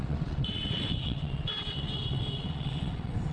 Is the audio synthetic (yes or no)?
yes